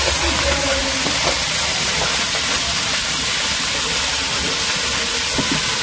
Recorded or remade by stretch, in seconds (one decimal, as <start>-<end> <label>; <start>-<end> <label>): 0.0-5.8 recorded